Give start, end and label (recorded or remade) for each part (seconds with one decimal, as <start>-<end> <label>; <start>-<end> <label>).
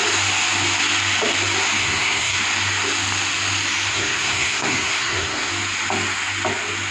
0.0-1.8 recorded; 1.8-2.4 remade; 2.4-3.9 recorded; 3.9-5.5 remade; 5.5-6.9 recorded